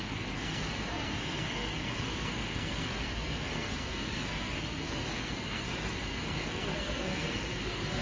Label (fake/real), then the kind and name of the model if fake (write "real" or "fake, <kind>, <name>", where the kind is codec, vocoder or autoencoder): fake, codec, SNAC